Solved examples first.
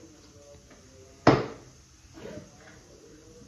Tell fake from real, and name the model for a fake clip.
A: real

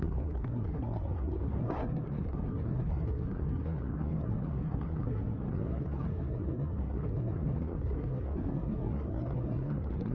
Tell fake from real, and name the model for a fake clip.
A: fake, codec, SNAC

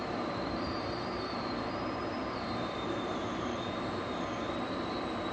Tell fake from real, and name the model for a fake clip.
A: fake, vocoder, BigVGAN v2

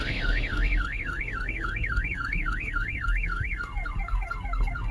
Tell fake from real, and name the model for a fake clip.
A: fake, codec, SNAC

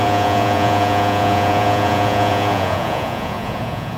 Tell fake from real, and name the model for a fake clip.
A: fake, vocoder, Vocos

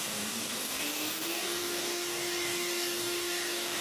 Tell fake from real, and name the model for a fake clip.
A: fake, codec, DAC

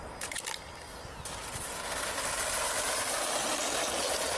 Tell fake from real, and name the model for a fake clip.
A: real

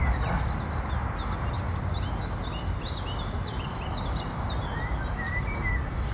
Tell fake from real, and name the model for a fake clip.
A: real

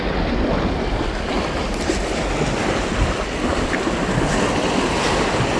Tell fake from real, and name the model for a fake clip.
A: real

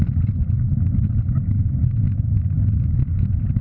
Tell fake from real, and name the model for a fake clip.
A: real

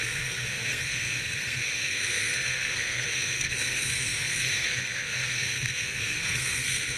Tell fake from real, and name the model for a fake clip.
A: fake, codec, SNAC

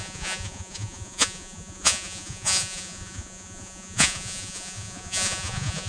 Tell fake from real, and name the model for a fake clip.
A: fake, vocoder, Vocos